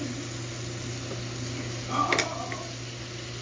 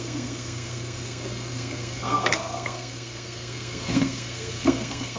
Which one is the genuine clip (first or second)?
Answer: first